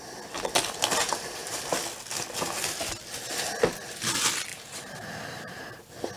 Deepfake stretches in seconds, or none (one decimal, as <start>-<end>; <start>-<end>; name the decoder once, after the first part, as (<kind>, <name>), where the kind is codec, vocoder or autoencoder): 0.9-1.6 (vocoder, BigVGAN v2); 4.5-5.6